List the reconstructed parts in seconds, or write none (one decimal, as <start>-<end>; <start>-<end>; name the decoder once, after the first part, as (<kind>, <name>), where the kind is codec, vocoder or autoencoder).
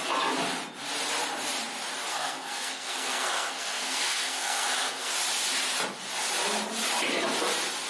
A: 2.1-5.1 (codec, SNAC)